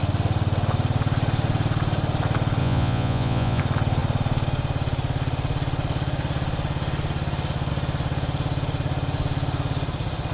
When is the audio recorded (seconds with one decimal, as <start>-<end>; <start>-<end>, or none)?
0.0-2.6; 3.6-10.3